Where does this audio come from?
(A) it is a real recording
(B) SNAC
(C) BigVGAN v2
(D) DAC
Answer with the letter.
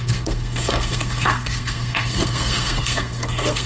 B